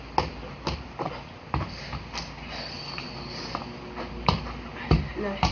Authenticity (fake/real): real